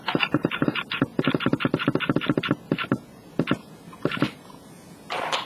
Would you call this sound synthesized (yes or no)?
no